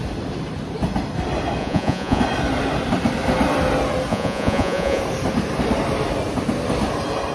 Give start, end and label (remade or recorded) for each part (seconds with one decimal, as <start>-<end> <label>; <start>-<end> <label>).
0.0-1.6 recorded; 1.6-2.2 remade; 2.2-4.1 recorded; 4.1-5.0 remade; 5.0-7.3 recorded